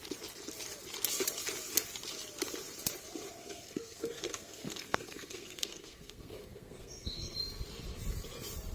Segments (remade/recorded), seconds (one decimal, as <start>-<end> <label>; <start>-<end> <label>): 0.0-3.4 recorded; 3.4-7.4 remade; 7.4-8.7 recorded